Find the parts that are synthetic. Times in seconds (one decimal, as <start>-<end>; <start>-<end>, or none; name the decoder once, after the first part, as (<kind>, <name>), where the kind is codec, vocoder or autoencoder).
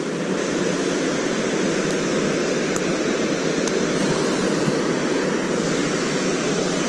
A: none